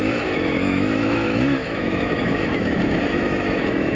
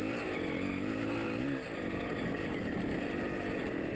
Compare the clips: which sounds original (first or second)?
second